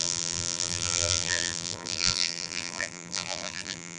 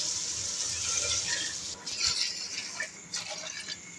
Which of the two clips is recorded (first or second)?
second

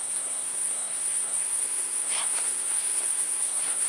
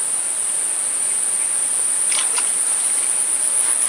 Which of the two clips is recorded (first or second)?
second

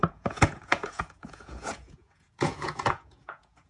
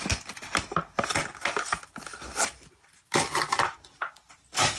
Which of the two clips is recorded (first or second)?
second